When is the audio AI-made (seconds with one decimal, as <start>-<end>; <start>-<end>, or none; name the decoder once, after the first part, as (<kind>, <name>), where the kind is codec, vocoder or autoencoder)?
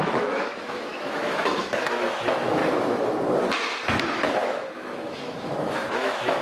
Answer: 0.0-2.6 (autoencoder, DAC-VAE); 4.0-6.4